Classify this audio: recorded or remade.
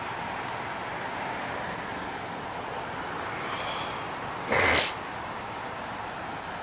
recorded